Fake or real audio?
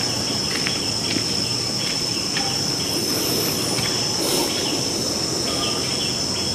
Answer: real